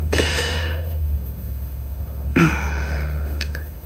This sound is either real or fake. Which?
fake